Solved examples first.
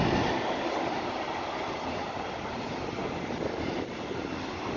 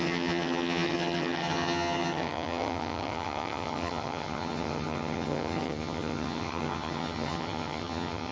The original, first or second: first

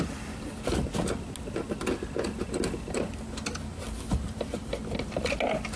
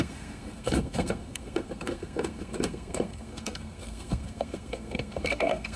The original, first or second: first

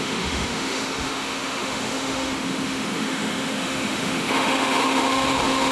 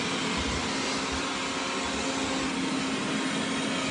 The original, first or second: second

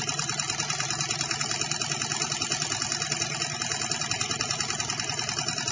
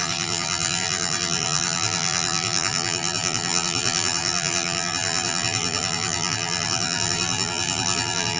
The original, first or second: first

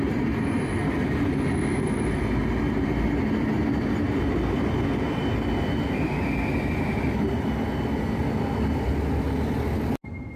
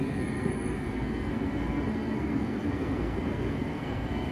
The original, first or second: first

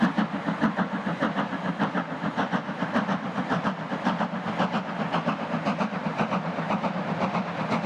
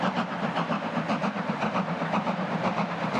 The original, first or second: first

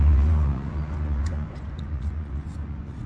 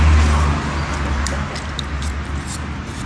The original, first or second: second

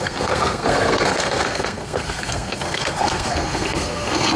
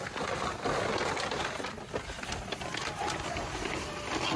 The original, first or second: second